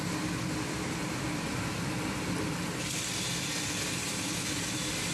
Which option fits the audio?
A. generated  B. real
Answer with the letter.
B